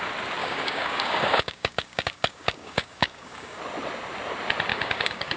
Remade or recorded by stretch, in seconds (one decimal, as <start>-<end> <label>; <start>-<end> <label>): 0.0-0.4 recorded; 0.4-3.6 remade; 3.6-4.7 recorded; 4.7-5.4 remade

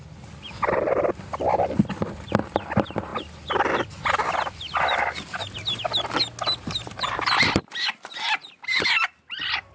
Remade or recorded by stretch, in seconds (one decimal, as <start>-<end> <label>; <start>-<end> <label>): 0.0-9.7 recorded